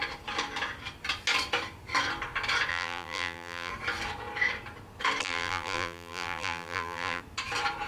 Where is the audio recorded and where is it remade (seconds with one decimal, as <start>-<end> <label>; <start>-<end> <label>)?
0.0-2.7 recorded; 2.7-3.7 remade; 3.7-5.2 recorded; 5.2-7.2 remade; 7.2-7.9 recorded